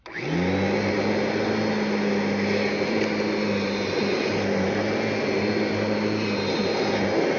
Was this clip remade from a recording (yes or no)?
no